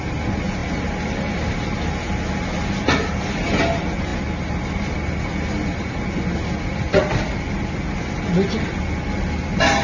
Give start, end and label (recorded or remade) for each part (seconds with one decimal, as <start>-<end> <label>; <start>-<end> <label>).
0.0-9.8 recorded